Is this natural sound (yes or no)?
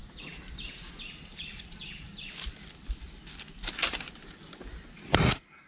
yes